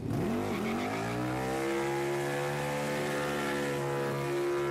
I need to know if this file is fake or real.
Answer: real